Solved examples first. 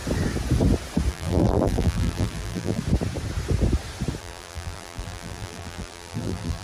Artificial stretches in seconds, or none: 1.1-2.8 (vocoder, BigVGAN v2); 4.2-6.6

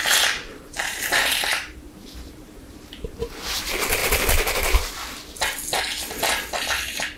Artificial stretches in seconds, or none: 0.5-3.1 (vocoder, BigVGAN v2)

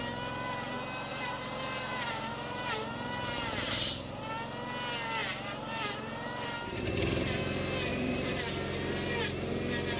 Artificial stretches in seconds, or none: 1.1-4.2 (vocoder, BigVGAN v2); 5.2-7.4; 7.9-8.5

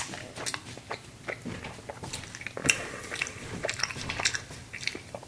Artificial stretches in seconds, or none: 0.5-1.2 (vocoder, BigVGAN v2); 2.6-5.3

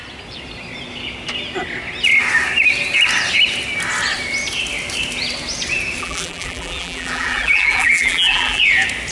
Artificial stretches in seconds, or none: 6.0-8.6 (vocoder, BigVGAN v2)

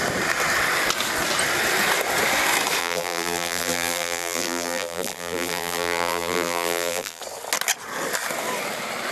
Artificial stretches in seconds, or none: 2.8-7.2 (vocoder, BigVGAN v2)

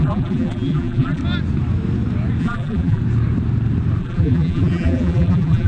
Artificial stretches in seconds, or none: 0.0-1.2 (vocoder, BigVGAN v2); 2.4-3.0; 4.0-5.7